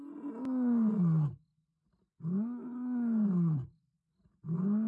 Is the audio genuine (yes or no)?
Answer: yes